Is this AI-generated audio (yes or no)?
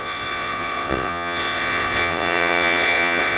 yes